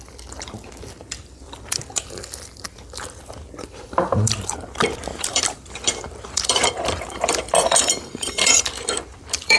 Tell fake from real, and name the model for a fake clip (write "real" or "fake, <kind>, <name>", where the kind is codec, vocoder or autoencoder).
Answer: fake, vocoder, BigVGAN v2